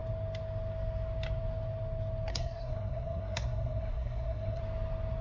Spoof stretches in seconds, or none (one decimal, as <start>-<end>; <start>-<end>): 2.3-4.6